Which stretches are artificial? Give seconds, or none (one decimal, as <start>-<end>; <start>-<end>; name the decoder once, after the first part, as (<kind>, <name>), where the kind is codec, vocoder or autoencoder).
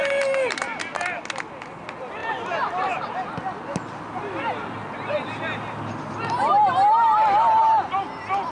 none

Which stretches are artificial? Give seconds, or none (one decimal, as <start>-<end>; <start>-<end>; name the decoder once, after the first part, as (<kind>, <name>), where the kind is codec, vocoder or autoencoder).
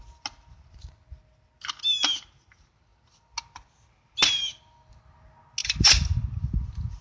none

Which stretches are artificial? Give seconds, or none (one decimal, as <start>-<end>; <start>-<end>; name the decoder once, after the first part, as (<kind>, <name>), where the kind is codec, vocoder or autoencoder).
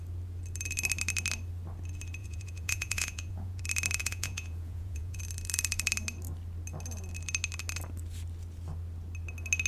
2.2-3.6 (vocoder, Vocos); 4.0-5.2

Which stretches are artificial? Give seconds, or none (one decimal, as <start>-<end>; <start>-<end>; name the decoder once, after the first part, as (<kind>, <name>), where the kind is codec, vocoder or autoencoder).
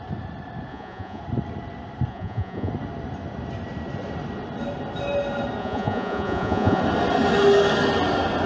0.7-1.2 (vocoder, Vocos); 2.1-2.7; 5.6-6.8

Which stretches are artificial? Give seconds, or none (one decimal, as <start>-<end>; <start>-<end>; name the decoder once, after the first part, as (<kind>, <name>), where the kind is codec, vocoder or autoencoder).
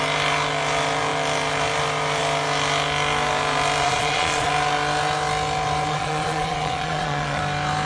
3.8-4.5 (vocoder, Vocos); 5.9-7.4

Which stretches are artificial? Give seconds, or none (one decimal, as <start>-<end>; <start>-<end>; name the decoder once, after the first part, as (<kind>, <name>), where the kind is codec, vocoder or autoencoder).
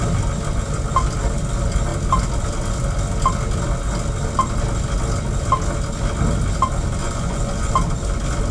7.0-7.7 (vocoder, Vocos)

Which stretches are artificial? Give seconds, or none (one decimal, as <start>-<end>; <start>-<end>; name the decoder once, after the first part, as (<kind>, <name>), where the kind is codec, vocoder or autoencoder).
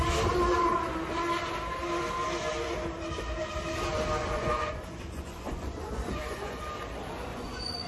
4.2-6.6 (vocoder, Vocos); 7.3-7.9